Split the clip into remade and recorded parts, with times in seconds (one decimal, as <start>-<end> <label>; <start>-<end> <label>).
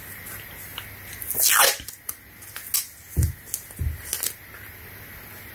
0.0-5.5 recorded